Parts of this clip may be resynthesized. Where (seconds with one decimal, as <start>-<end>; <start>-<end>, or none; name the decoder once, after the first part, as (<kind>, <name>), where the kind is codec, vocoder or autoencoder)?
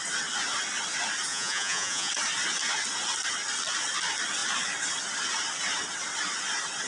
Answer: 1.3-2.1 (vocoder, Vocos)